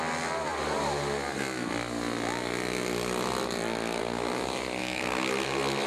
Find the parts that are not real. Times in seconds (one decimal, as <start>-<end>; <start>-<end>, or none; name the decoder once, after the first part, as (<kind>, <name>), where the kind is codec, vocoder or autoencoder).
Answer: 4.8-5.3 (codec, DAC)